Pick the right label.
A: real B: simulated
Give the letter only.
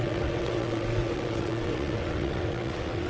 B